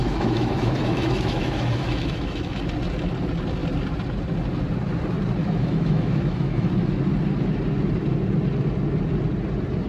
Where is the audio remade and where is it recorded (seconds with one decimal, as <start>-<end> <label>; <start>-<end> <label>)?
0.0-2.6 remade; 2.6-5.4 recorded; 5.4-6.7 remade; 6.7-9.9 recorded